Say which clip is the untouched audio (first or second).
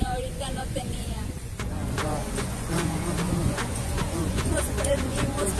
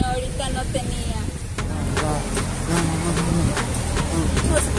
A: second